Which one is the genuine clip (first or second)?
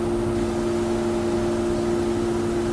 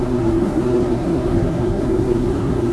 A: first